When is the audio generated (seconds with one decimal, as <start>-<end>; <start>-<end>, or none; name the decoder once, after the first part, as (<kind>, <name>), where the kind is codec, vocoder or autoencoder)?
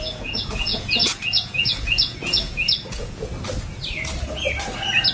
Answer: 0.0-3.3 (vocoder, Vocos)